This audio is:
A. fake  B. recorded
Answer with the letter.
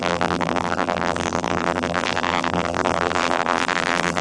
A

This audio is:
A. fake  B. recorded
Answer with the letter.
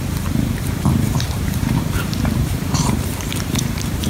A